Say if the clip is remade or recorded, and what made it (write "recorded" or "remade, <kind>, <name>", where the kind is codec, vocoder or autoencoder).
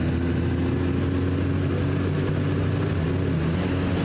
recorded